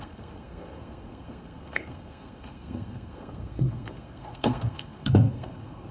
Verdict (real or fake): fake